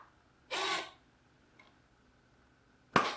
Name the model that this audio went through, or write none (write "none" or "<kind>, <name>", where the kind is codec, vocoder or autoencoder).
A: none